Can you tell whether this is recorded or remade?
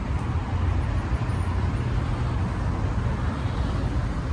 recorded